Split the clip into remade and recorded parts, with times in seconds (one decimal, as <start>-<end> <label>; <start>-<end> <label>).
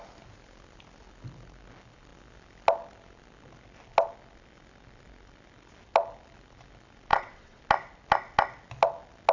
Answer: 0.0-7.1 recorded; 7.1-7.6 remade; 7.6-9.3 recorded